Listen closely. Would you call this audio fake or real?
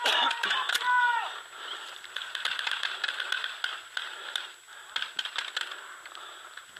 real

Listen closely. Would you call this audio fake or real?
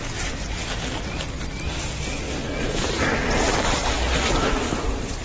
real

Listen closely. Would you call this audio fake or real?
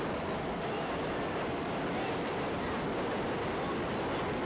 fake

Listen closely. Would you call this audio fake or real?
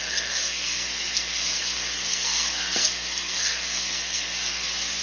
fake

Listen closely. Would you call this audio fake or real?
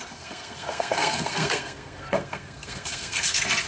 fake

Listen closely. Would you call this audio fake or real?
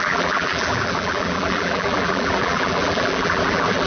fake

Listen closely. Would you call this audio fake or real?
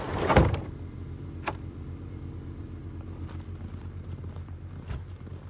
fake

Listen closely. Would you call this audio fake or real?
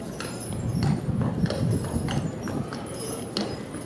real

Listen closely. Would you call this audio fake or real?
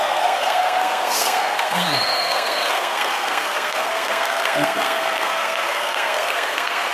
fake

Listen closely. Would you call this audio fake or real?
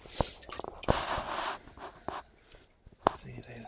real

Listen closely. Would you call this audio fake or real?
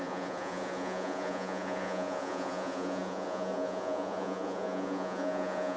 fake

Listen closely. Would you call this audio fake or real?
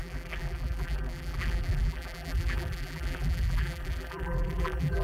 fake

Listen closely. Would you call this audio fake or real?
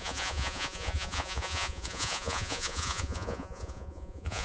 fake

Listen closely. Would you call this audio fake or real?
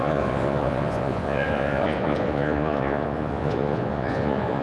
fake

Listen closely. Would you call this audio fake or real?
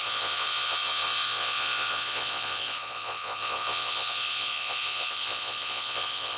fake